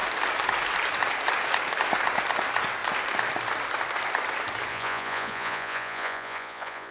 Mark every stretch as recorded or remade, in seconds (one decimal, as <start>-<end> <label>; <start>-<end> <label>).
0.0-4.7 recorded; 4.7-6.9 remade